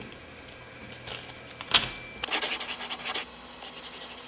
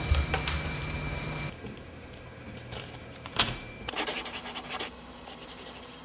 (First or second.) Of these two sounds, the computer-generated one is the second